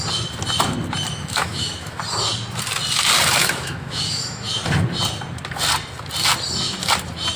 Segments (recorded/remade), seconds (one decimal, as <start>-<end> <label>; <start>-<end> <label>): 0.0-1.1 recorded; 1.1-2.0 remade; 2.0-3.4 recorded; 3.4-4.5 remade; 4.5-7.4 recorded